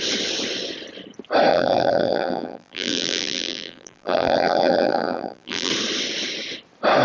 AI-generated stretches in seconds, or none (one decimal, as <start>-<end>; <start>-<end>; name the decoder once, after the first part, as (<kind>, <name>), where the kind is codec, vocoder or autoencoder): 1.5-5.7 (vocoder, BigVGAN v2)

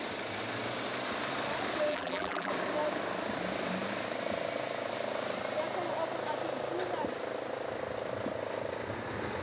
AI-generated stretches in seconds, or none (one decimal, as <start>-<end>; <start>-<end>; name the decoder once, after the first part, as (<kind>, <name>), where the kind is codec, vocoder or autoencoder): 1.9-2.5 (vocoder, BigVGAN v2)

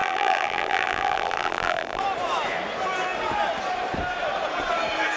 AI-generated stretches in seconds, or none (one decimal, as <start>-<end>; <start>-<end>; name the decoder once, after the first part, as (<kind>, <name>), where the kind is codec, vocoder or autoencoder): 0.0-2.0 (vocoder, BigVGAN v2)

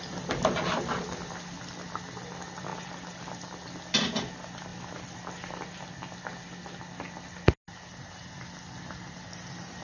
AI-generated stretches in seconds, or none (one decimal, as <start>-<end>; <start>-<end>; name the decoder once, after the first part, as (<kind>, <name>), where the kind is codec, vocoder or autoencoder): none

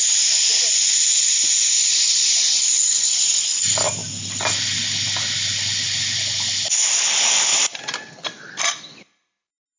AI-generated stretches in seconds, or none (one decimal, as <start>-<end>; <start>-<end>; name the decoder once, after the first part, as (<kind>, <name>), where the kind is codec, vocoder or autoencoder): none

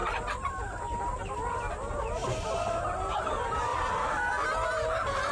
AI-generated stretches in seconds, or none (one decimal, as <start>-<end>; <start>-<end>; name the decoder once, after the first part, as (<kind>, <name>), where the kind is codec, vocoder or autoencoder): 3.7-4.3 (vocoder, BigVGAN v2)

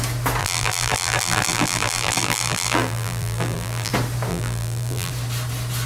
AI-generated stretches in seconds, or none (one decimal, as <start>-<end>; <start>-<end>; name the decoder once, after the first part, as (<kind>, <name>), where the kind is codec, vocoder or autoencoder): 0.4-3.9 (vocoder, BigVGAN v2); 4.3-5.1

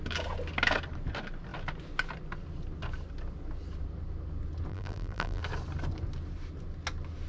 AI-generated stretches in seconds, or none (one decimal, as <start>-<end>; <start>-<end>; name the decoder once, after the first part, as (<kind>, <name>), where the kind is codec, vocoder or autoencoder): 4.7-5.4 (vocoder, BigVGAN v2)